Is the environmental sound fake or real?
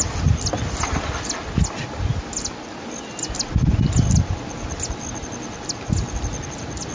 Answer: real